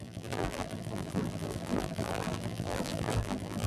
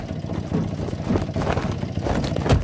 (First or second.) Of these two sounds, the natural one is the second